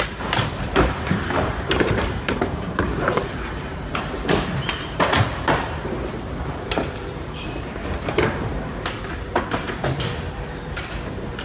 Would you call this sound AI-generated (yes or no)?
yes